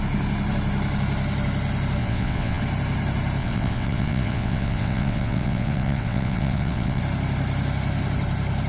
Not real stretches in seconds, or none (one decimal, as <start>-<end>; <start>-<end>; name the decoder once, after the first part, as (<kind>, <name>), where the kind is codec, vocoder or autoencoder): 2.0-2.6 (vocoder, WaveNeXt); 3.4-7.0